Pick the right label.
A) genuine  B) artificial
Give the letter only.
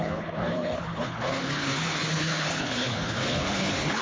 B